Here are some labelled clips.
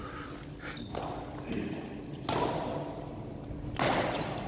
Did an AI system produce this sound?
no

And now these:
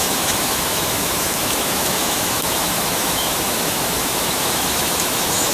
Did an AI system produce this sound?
yes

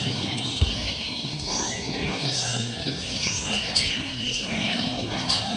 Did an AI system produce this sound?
yes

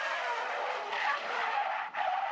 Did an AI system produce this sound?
no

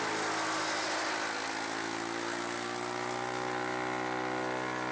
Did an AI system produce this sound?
no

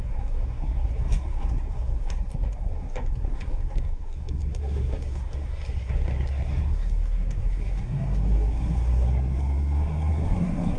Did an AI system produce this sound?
yes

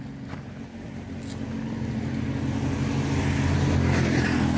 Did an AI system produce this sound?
no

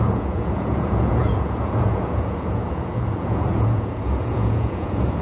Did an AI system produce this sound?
yes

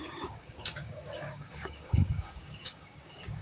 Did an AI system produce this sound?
yes